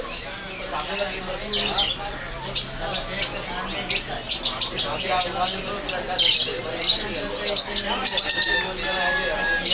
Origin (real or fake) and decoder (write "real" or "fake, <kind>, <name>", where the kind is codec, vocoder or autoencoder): real